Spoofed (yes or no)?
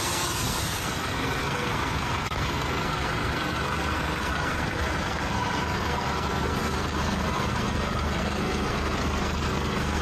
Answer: yes